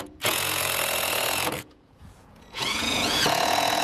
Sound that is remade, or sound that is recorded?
remade